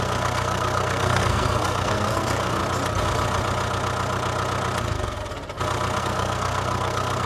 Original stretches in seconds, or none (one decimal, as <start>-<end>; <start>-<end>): 2.6-4.8; 5.2-6.0